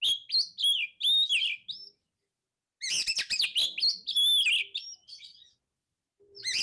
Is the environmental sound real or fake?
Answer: real